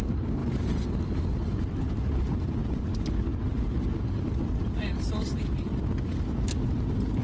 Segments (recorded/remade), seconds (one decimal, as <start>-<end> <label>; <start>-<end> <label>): 0.0-7.2 remade